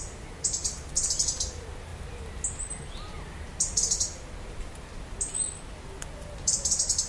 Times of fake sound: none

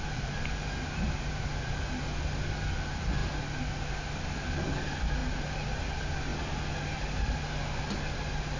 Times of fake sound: none

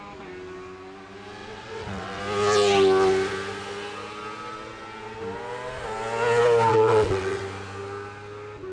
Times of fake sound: 1.4-2.2; 6.7-7.4

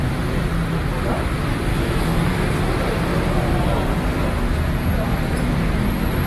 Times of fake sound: 1.7-2.2

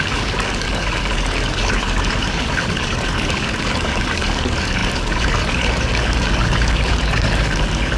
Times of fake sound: 0.0-8.0

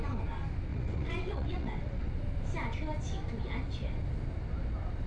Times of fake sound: 0.7-2.1

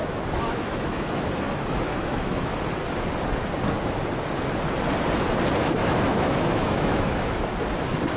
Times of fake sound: 0.0-2.6; 5.8-7.4